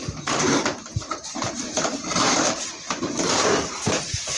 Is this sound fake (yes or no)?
yes